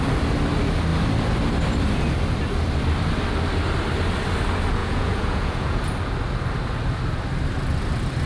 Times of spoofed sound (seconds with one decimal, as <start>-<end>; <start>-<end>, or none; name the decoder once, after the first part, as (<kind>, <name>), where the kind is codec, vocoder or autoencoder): 4.8-5.8 (vocoder, Vocos)